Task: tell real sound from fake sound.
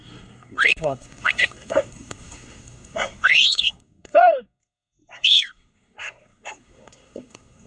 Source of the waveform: fake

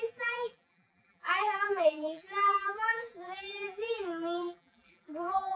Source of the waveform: fake